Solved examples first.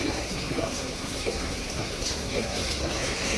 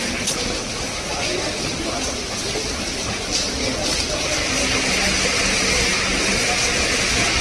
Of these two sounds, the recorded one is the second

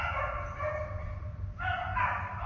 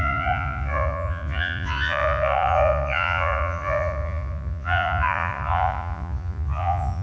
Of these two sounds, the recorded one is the first